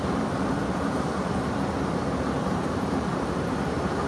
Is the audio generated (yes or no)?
yes